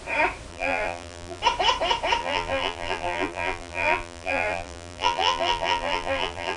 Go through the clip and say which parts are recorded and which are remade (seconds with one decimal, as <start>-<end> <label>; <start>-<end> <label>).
0.0-0.5 recorded; 0.5-1.4 remade; 1.4-2.2 recorded; 2.2-6.6 remade

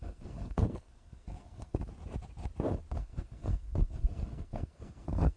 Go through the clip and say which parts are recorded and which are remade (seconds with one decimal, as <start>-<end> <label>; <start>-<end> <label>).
0.0-1.9 remade; 1.9-2.9 recorded; 2.9-5.4 remade

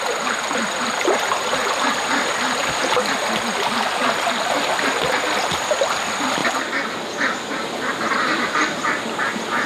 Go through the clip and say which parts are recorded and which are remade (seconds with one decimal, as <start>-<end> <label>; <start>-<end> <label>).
0.0-9.7 recorded

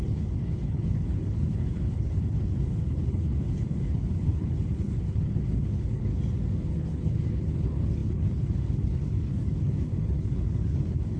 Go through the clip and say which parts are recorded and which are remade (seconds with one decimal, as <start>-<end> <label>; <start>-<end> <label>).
0.0-6.1 remade; 6.1-6.7 recorded; 6.7-11.2 remade